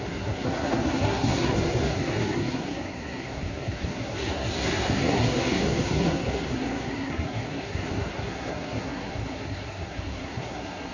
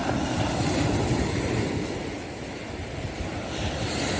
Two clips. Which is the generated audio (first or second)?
first